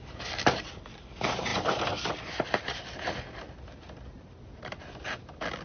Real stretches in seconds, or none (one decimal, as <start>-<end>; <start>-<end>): 0.0-5.6